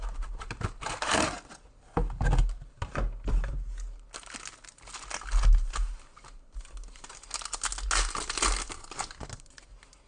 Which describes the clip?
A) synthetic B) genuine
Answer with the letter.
B